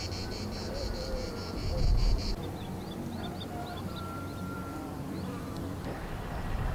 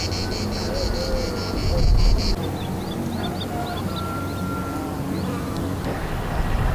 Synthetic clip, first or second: first